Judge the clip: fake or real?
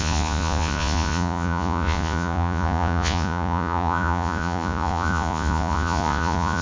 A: fake